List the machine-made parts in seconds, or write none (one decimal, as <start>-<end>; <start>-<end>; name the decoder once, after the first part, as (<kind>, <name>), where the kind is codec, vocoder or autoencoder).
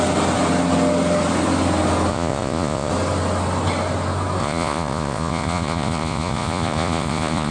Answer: 2.1-2.9 (vocoder, Vocos); 4.4-7.5